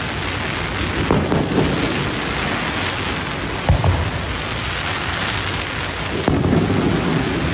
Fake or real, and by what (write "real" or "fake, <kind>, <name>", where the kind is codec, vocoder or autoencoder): real